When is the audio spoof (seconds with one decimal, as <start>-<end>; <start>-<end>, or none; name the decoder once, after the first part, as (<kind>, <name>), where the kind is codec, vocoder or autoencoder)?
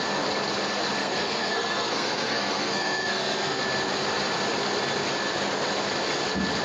1.0-3.6 (codec, SNAC)